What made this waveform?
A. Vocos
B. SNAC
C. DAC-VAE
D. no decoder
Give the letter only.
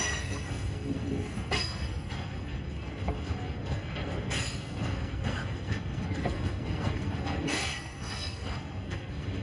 B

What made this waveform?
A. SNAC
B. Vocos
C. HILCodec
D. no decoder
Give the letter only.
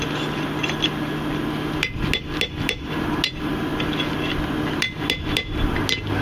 D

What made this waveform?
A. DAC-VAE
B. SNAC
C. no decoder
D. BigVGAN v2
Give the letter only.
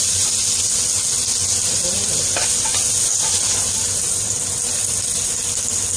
C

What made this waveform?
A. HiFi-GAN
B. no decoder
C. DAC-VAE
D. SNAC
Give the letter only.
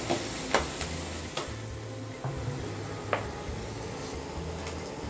B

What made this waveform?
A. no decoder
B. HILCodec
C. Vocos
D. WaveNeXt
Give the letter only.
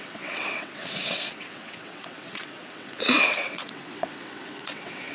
D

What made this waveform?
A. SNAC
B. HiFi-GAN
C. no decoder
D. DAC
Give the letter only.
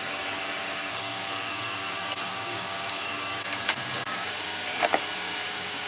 D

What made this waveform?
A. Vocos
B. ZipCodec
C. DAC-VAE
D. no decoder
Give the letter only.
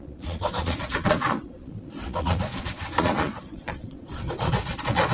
A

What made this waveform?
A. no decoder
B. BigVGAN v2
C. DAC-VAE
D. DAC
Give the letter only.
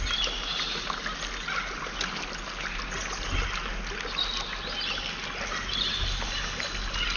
A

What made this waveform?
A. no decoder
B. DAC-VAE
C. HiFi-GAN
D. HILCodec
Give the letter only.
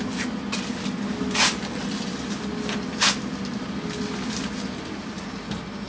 A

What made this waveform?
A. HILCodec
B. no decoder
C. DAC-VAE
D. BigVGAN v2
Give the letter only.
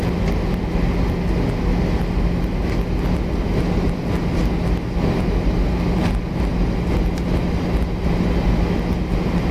B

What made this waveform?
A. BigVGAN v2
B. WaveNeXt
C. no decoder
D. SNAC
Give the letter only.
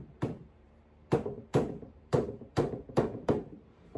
A